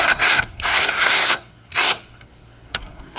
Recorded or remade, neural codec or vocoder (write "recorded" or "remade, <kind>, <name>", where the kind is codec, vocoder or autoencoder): remade, codec, SNAC